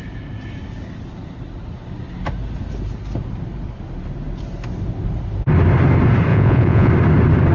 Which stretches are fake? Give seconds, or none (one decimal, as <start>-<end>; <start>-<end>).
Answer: 6.3-6.9

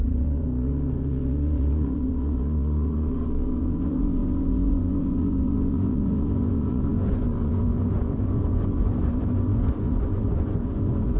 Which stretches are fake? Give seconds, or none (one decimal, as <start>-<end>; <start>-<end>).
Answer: 0.0-11.2

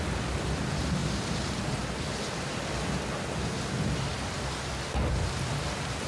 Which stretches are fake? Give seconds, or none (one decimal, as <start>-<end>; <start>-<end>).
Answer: none